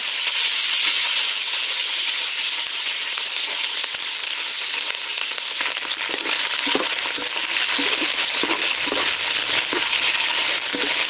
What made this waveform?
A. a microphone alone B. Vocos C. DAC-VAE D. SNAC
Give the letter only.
A